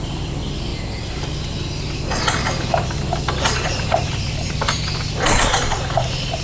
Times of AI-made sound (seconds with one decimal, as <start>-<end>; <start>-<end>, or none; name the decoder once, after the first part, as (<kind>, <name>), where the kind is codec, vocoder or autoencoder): none